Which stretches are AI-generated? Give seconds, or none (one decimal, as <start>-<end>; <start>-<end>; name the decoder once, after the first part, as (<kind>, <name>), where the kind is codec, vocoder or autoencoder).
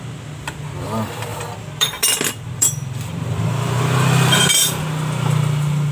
1.3-4.8 (vocoder, BigVGAN v2)